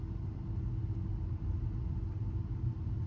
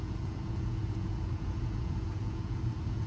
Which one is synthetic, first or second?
second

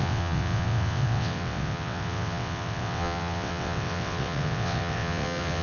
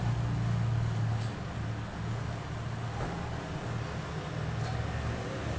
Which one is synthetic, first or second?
first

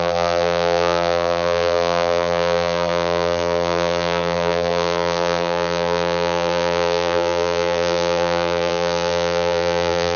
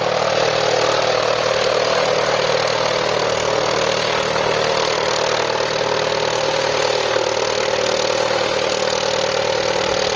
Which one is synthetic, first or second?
first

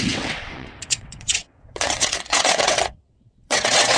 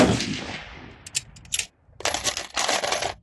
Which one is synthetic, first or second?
first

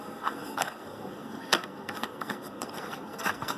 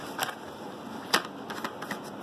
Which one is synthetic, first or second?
first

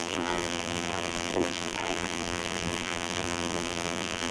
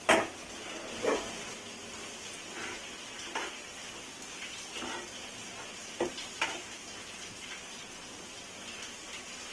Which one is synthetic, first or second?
first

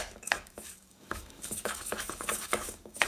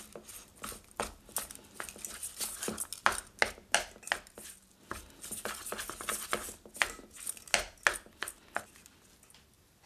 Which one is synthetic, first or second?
first